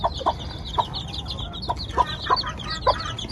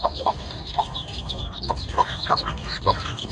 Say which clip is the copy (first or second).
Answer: second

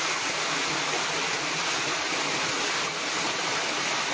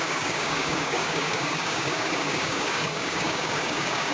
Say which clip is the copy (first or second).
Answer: second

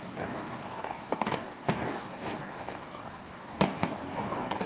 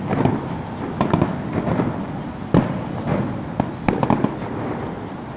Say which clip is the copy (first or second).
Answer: first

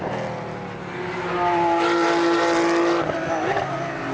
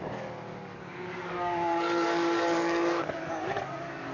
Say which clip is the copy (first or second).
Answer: second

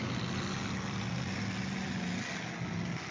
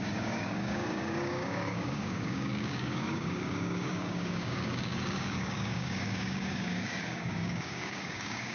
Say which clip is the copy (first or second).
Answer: second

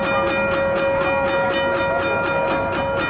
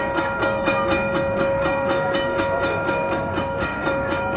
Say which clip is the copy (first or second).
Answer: second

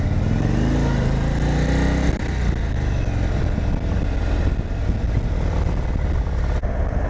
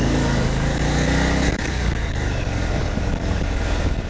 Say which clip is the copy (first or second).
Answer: second